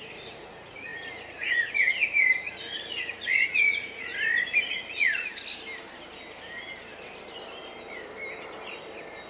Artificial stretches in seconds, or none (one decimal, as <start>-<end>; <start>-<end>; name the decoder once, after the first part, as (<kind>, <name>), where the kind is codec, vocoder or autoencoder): 0.0-4.1 (vocoder, Vocos); 4.7-5.3